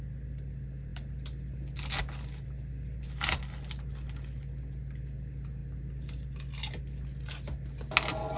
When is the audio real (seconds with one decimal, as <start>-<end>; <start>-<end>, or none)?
0.0-8.4